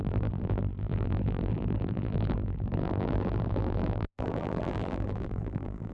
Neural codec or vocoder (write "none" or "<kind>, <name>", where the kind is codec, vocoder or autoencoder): vocoder, BigVGAN v2